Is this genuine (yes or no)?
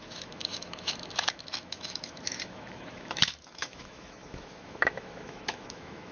no